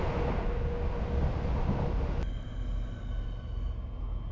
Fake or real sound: real